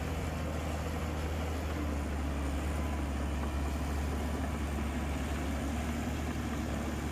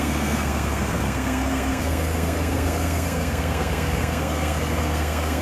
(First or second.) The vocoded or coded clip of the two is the second